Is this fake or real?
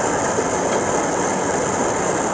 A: real